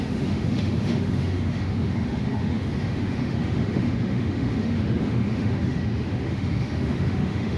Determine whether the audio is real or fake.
fake